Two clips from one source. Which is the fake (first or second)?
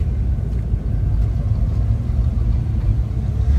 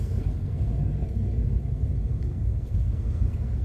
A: second